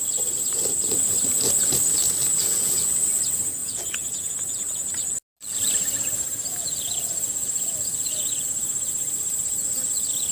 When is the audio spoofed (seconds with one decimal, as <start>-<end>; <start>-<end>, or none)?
2.3-2.9; 3.6-4.3; 6.5-8.5